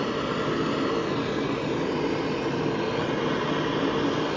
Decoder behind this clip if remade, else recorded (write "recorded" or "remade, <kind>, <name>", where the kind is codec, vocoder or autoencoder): recorded